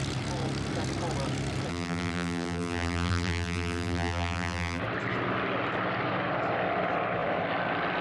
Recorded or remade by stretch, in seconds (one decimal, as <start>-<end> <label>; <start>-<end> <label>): 0.0-1.7 recorded; 1.7-4.8 remade; 4.8-8.0 recorded